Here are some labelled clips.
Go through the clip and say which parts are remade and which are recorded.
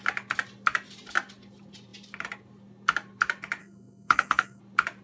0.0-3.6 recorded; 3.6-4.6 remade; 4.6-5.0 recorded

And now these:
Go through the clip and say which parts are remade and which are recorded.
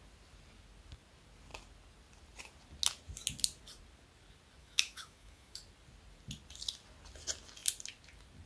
0.0-4.6 recorded; 4.6-5.6 remade; 5.6-8.5 recorded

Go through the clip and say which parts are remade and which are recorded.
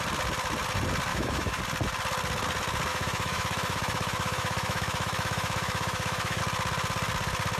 0.0-1.1 recorded; 1.1-1.6 remade; 1.6-2.9 recorded; 2.9-6.4 remade; 6.4-7.6 recorded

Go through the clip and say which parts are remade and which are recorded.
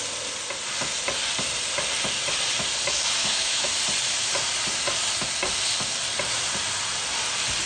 0.0-3.2 recorded; 3.2-3.7 remade; 3.7-7.7 recorded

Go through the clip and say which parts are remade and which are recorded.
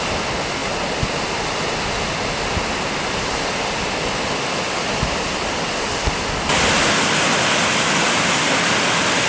0.0-9.3 recorded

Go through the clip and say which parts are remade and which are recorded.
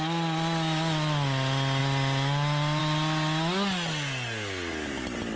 0.0-5.4 recorded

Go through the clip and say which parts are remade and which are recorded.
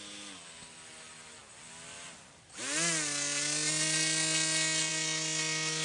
0.0-5.8 recorded